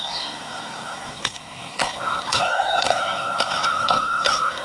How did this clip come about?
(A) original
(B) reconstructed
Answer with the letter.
B